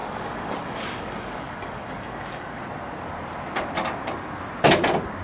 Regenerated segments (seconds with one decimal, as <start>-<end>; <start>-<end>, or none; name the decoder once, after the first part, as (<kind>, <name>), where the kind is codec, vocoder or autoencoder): 0.0-2.6 (codec, DAC)